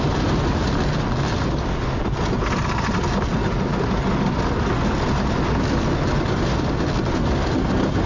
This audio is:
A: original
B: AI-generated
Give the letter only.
A